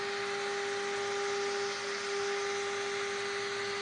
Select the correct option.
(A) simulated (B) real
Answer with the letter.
B